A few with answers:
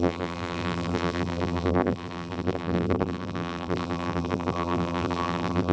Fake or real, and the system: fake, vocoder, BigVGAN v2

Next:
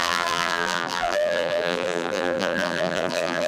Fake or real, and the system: fake, vocoder, BigVGAN v2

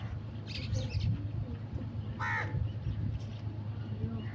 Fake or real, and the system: real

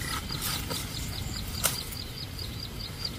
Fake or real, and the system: real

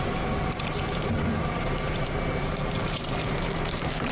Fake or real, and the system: fake, vocoder, BigVGAN v2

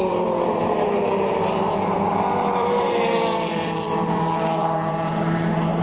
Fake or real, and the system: fake, vocoder, BigVGAN v2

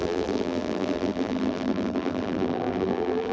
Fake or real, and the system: fake, vocoder, BigVGAN v2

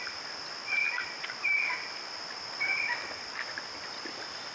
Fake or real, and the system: fake, vocoder, BigVGAN v2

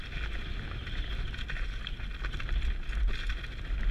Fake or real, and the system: real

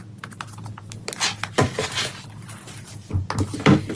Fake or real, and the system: real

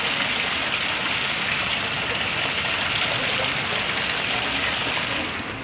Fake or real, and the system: real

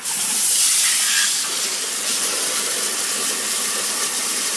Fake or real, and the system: real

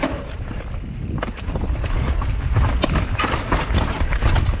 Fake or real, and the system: fake, vocoder, BigVGAN v2